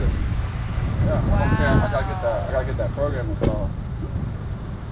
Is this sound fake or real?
real